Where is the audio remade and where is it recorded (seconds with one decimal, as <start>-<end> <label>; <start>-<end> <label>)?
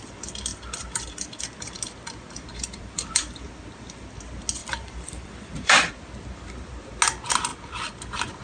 0.0-0.5 recorded; 0.5-1.4 remade; 1.4-2.5 recorded; 2.5-3.5 remade; 3.5-4.6 recorded; 4.6-5.9 remade; 5.9-8.4 recorded